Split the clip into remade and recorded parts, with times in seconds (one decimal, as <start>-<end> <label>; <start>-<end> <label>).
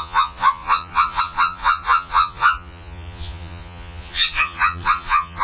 0.0-5.4 remade